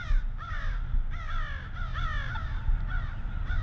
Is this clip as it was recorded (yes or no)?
yes